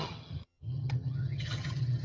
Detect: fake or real fake